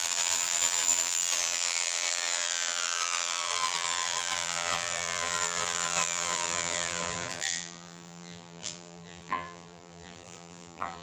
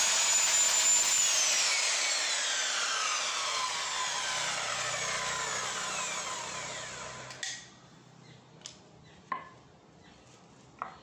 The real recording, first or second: second